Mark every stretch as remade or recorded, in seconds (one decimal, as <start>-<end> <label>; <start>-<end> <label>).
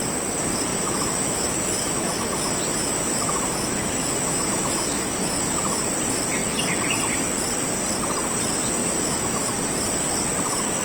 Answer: 0.0-0.7 recorded; 0.7-5.8 remade; 5.8-8.8 recorded; 8.8-9.5 remade; 9.5-10.8 recorded